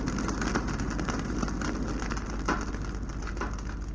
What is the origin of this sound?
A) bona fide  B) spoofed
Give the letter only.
A